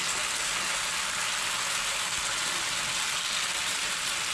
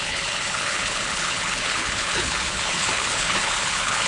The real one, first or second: first